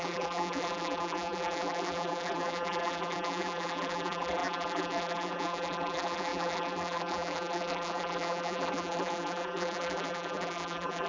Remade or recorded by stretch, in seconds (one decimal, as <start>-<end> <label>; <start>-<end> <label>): 0.0-11.1 remade